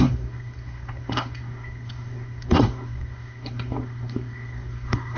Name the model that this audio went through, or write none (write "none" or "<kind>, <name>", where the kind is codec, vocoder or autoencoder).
codec, SNAC